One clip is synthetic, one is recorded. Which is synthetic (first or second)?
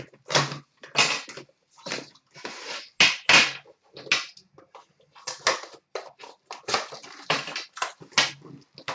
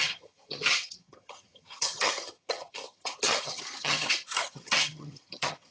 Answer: second